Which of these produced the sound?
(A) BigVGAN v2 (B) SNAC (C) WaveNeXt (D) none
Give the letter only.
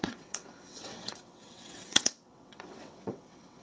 C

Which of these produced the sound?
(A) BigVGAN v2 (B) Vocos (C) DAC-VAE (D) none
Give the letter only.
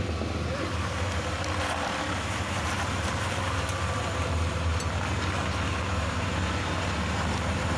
D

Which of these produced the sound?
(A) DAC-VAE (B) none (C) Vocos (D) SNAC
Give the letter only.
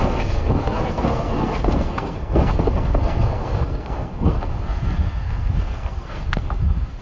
D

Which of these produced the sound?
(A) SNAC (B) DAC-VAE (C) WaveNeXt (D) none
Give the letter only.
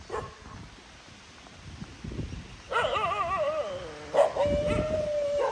D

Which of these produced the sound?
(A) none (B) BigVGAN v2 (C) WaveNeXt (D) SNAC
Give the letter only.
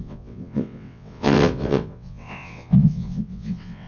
C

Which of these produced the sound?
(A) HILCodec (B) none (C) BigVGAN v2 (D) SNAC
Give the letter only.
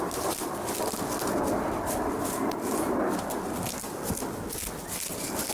B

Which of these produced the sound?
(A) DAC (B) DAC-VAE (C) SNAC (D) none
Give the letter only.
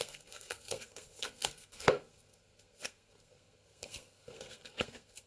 C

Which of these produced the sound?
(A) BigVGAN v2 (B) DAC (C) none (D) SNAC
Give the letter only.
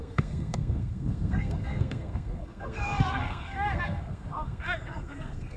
D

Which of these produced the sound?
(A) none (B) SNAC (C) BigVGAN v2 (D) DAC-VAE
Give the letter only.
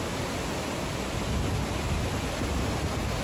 A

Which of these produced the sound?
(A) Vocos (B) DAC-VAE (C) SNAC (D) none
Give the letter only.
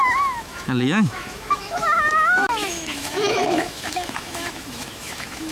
B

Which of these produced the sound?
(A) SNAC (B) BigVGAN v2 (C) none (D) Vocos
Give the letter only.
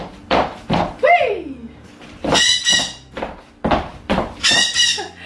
B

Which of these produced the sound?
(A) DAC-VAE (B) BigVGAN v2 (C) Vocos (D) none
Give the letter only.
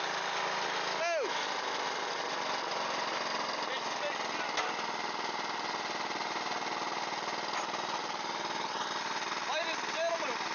D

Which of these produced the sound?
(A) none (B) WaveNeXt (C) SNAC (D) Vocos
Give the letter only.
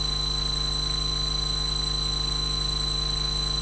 A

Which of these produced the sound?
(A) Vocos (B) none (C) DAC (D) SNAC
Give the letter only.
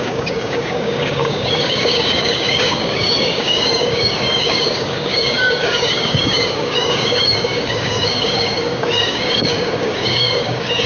C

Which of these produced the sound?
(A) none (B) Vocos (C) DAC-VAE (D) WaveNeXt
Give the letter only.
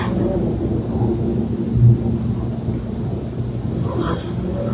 A